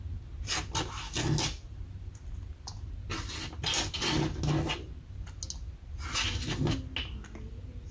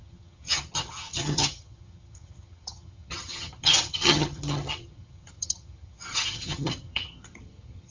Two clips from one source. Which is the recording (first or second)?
first